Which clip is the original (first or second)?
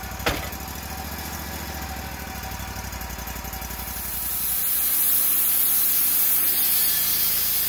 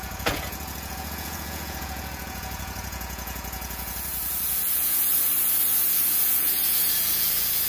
first